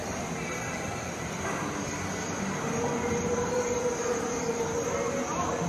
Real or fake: real